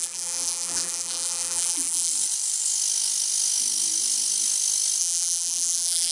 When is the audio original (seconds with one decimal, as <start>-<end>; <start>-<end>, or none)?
2.1-5.0